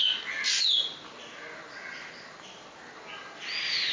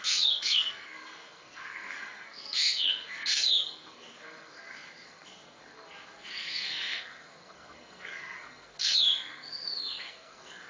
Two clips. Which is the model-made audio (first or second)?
second